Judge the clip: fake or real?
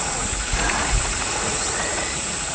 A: fake